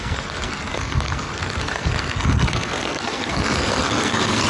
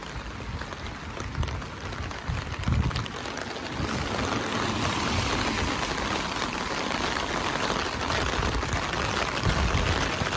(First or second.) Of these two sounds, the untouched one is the second